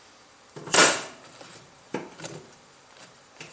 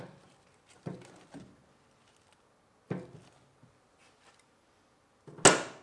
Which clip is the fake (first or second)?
first